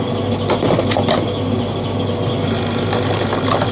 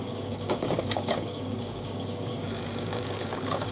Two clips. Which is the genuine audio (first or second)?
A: first